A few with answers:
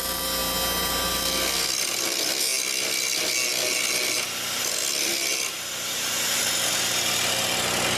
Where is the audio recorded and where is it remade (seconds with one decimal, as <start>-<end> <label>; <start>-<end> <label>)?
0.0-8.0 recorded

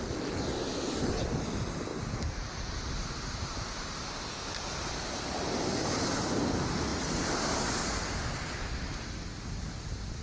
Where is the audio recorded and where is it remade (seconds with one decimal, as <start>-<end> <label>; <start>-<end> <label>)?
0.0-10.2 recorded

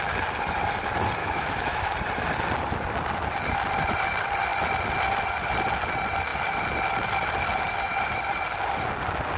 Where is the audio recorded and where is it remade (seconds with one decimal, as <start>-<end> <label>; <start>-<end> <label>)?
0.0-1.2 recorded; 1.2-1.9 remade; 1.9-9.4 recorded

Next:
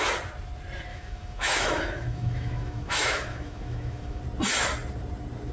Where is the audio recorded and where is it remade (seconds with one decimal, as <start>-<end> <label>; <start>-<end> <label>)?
0.0-0.9 recorded; 0.9-4.2 remade; 4.2-5.5 recorded

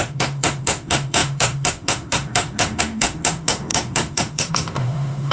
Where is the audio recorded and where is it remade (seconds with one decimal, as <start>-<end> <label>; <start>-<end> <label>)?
0.0-5.3 remade

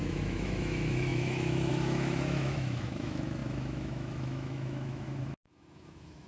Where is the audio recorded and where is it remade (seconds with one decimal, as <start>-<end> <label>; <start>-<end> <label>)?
0.0-6.3 remade

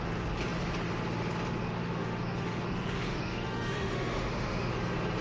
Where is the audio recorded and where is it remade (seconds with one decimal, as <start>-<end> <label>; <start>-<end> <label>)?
0.0-1.6 recorded; 1.6-4.7 remade; 4.7-5.2 recorded